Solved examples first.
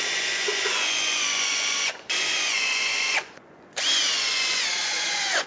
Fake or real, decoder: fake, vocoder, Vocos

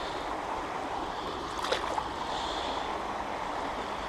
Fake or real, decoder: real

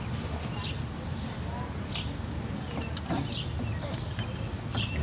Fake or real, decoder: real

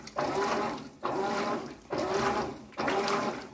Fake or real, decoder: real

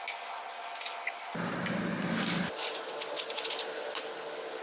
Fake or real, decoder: real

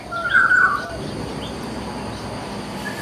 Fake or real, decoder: real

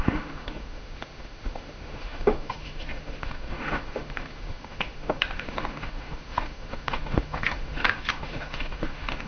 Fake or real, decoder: fake, autoencoder, DAC-VAE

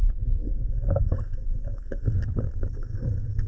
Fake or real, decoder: fake, codec, SNAC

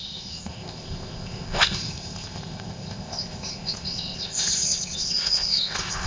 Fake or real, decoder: fake, codec, ZipCodec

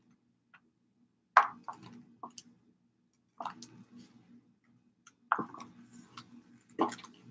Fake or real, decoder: real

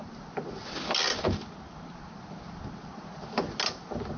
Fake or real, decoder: real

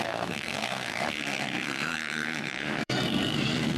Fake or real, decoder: fake, codec, SNAC